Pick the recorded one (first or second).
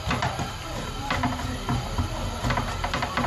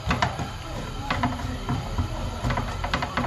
first